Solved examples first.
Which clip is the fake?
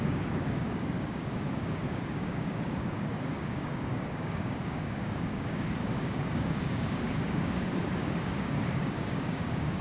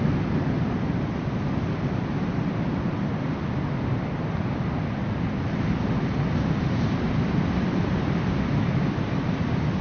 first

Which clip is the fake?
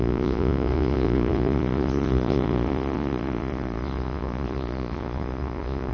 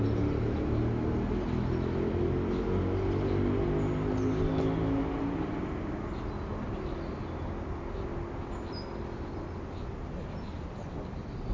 first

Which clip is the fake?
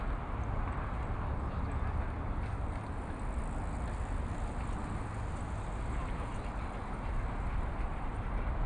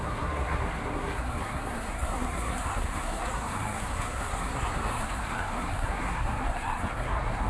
second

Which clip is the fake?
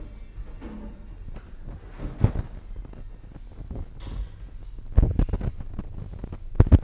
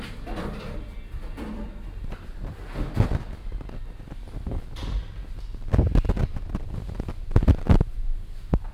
second